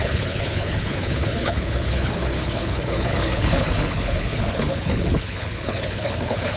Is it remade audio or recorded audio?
remade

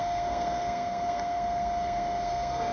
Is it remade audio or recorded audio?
remade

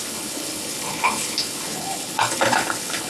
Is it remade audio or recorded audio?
remade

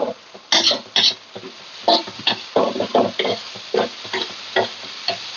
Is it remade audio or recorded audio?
recorded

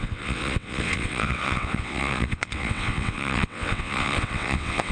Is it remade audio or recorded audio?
remade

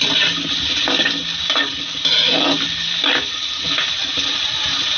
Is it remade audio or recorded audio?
recorded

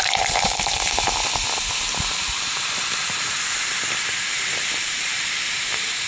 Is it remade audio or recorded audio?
recorded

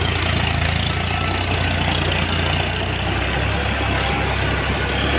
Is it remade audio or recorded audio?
recorded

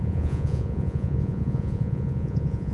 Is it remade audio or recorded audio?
remade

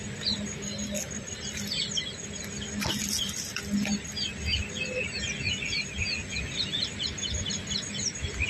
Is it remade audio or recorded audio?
recorded